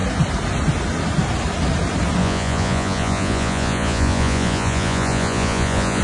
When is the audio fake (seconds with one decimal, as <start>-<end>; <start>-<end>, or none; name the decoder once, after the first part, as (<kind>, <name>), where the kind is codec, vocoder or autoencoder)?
2.2-6.0 (vocoder, Vocos)